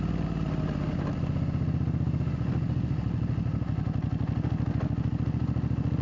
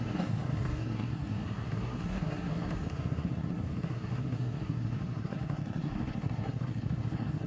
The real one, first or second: first